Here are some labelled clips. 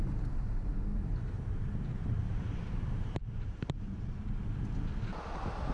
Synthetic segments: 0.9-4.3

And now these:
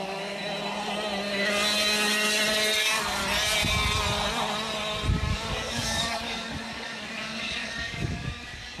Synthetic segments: 0.0-0.4; 2.8-3.2; 5.1-8.8

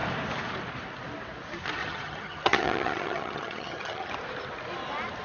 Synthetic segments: 1.8-4.1

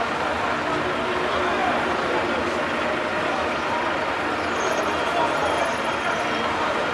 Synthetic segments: 1.6-2.3; 5.4-6.9

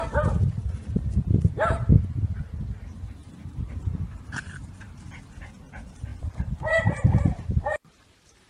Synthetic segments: 3.2-5.1; 6.1-8.5

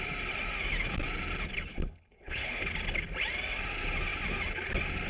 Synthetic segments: 1.7-2.7